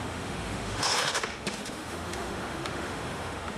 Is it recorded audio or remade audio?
remade